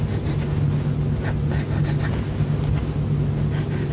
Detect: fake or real real